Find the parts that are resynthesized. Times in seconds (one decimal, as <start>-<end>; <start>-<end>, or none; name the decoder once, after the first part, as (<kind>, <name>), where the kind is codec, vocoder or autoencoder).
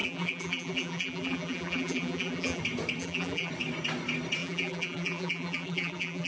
0.0-2.6 (vocoder, BigVGAN v2); 3.0-3.5; 4.4-6.3